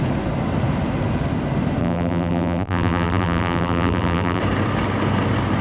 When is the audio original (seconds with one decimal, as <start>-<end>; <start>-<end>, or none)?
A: 0.0-1.8; 4.4-5.6